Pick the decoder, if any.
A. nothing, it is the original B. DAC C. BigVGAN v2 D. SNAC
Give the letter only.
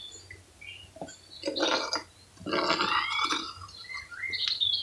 A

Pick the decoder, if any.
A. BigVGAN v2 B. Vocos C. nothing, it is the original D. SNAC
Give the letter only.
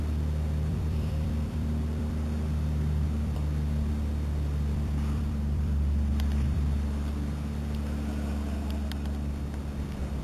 A